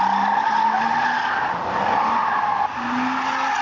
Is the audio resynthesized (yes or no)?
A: no